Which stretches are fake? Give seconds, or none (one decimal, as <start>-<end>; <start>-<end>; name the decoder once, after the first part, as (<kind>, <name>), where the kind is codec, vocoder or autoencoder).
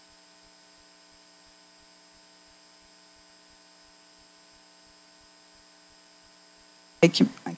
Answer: none